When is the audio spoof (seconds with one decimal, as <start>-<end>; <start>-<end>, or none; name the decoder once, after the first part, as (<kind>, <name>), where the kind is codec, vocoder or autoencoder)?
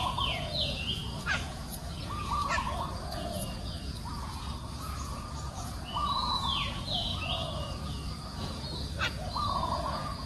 0.0-10.3 (vocoder, Vocos)